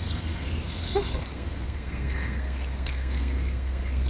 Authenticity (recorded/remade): remade